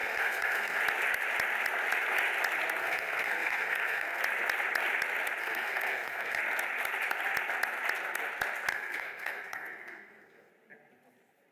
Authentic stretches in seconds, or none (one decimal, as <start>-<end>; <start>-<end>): 0.8-2.8; 4.2-5.4; 6.4-8.7; 10.5-11.5